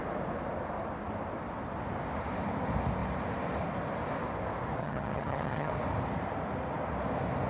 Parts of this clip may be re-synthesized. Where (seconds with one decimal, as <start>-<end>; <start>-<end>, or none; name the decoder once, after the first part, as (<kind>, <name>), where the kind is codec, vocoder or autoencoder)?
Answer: 4.8-5.7 (vocoder, HiFi-GAN)